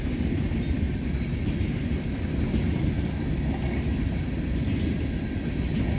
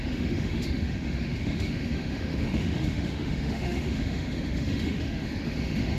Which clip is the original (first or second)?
first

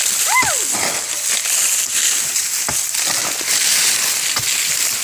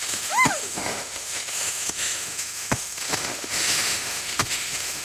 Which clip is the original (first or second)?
first